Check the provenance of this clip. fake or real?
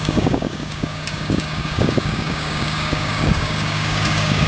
fake